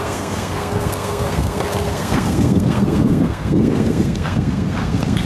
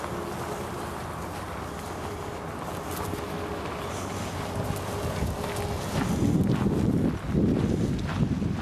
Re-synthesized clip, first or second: first